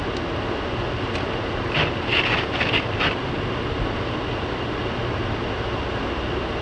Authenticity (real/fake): real